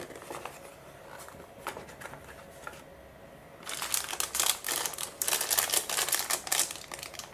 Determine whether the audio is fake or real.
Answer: real